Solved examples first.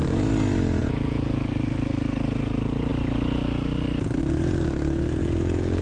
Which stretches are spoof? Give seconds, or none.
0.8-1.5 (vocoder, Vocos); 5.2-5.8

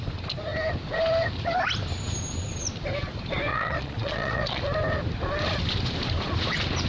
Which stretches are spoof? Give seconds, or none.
3.5-4.6 (vocoder, Vocos)

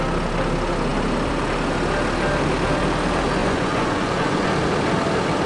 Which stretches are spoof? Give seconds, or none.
3.4-4.5 (vocoder, Vocos)

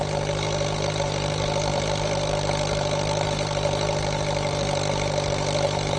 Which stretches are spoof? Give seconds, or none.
none

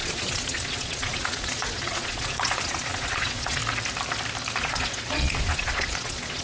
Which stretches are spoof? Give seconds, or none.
0.0-3.6 (vocoder, Vocos); 4.6-6.4

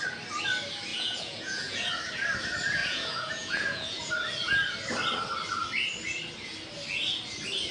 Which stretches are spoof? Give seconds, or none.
0.9-1.9 (vocoder, Vocos); 2.8-4.1